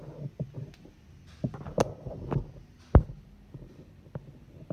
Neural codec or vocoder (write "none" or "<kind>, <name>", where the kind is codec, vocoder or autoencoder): none